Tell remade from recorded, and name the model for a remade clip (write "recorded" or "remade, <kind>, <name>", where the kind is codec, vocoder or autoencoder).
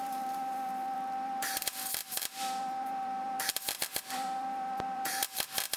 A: remade, vocoder, BigVGAN v2